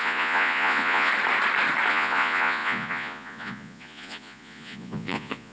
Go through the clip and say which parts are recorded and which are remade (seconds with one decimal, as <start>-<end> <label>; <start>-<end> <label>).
0.0-1.1 remade; 1.1-1.9 recorded; 1.9-5.5 remade